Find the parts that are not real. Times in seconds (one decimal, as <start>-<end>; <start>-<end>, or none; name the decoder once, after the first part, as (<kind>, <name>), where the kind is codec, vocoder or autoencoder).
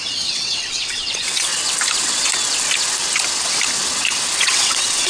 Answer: 0.0-1.5 (vocoder, WaveNeXt); 4.4-5.1